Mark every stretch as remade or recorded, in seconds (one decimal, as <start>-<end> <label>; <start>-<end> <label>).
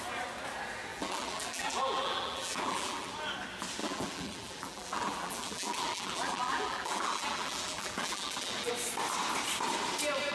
0.0-0.9 recorded; 0.9-3.1 remade; 3.1-3.8 recorded; 3.8-8.7 remade; 8.7-10.3 recorded